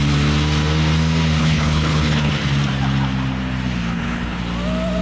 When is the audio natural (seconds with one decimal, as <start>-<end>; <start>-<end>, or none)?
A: 0.0-1.4; 2.3-3.9; 4.4-5.0